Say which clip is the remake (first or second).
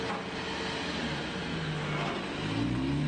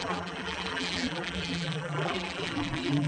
second